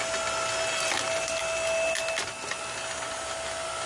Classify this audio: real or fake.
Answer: real